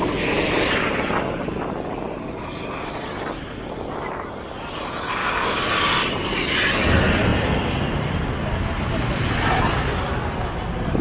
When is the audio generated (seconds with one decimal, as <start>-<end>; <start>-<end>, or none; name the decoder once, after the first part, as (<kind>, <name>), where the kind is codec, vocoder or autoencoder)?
5.2-5.7 (codec, DAC)